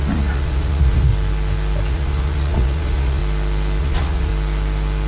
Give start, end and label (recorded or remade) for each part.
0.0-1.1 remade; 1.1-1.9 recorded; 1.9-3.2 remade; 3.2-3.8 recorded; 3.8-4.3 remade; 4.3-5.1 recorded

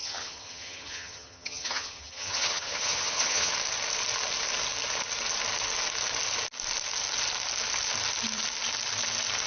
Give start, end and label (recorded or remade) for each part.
0.0-3.5 remade; 3.5-9.5 recorded

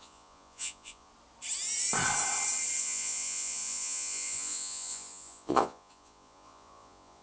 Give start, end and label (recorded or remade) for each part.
0.0-1.1 remade; 1.1-2.8 recorded; 2.8-7.2 remade

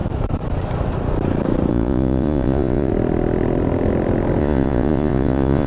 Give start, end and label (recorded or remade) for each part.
0.0-1.7 recorded; 1.7-2.9 remade; 2.9-4.4 recorded; 4.4-5.7 remade

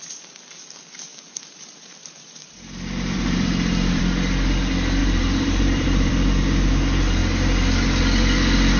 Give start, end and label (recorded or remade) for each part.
0.0-1.1 recorded; 1.1-4.0 remade; 4.0-5.0 recorded; 5.0-6.1 remade; 6.1-8.8 recorded

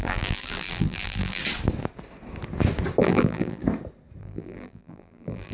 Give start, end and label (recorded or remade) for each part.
0.0-1.4 remade; 1.4-3.0 recorded; 3.0-3.6 remade; 3.6-4.2 recorded; 4.2-5.5 remade

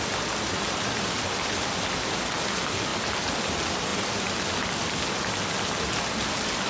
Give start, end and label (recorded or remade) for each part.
0.0-6.7 recorded